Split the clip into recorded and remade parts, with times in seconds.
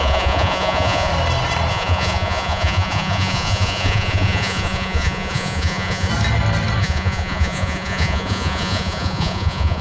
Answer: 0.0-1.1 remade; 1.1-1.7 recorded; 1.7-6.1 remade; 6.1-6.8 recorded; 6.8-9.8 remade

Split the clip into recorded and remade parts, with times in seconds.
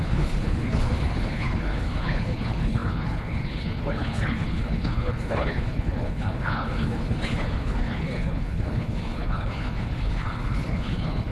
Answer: 0.0-11.3 remade